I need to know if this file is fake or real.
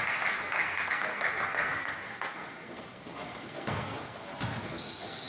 fake